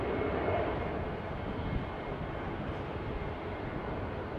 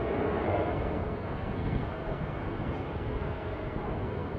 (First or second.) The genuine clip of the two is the first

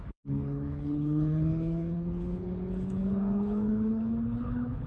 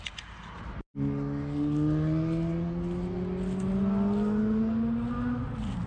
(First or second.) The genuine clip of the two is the second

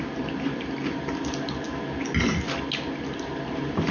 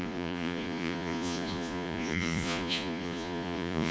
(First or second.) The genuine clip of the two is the first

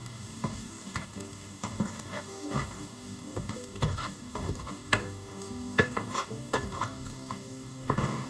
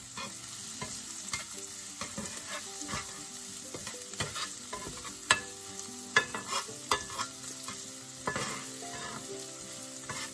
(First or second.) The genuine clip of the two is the second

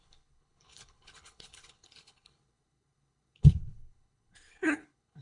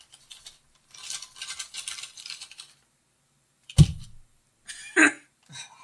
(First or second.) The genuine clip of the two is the second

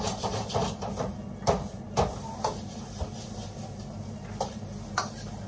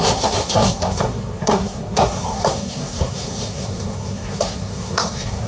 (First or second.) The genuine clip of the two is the first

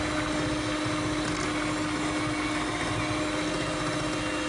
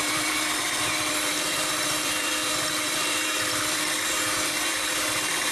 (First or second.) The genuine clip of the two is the first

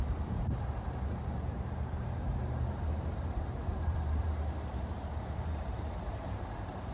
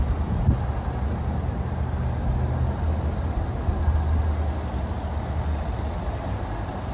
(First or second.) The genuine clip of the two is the second